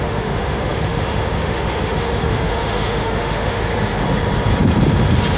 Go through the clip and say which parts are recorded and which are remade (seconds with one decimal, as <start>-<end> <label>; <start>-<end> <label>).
0.0-3.7 remade; 3.7-5.4 recorded